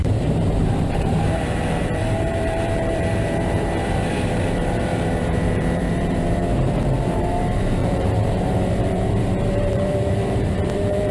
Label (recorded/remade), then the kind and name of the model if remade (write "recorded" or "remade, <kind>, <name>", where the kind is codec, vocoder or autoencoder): remade, vocoder, BigVGAN v2